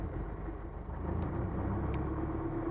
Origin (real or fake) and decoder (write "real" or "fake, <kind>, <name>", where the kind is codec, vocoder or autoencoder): real